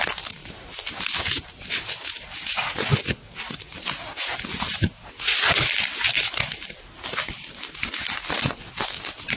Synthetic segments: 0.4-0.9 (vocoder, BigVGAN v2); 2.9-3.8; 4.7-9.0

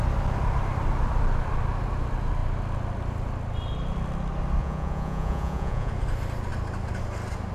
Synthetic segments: 4.6-5.9 (vocoder, Vocos)

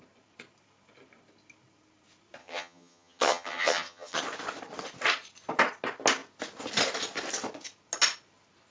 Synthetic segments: 2.4-4.2 (vocoder, HiFi-GAN)

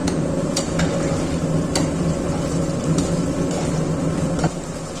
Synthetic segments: 0.0-0.9 (vocoder, Vocos)

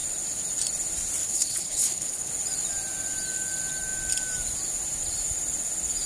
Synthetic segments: 1.2-2.3 (codec, HILCodec)

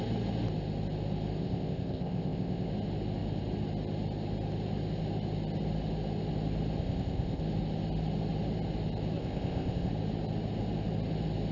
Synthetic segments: 1.4-2.7 (codec, ZipCodec); 6.8-7.4; 9.2-9.9

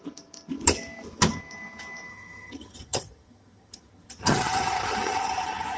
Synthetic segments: 2.1-5.8 (vocoder, HiFi-GAN)